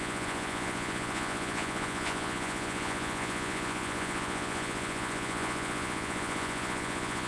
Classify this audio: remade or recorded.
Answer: remade